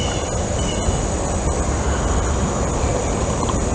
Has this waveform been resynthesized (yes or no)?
no